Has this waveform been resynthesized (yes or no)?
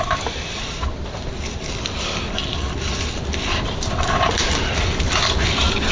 yes